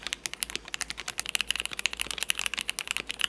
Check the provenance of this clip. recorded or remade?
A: recorded